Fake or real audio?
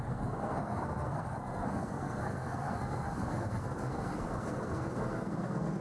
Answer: fake